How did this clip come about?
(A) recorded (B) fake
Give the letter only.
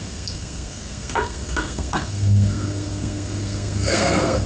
B